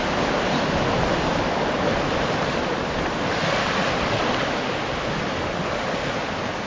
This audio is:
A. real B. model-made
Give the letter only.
A